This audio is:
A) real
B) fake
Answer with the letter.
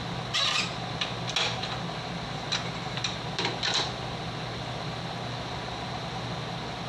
A